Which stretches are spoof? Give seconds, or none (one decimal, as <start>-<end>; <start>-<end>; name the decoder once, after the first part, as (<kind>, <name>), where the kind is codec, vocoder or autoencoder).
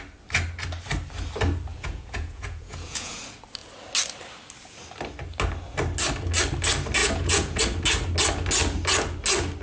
1.7-3.2 (vocoder, Vocos); 7.0-7.6